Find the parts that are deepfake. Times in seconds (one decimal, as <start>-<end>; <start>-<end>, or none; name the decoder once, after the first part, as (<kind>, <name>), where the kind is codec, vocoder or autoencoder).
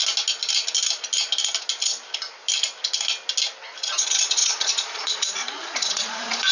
3.8-6.5 (vocoder, Vocos)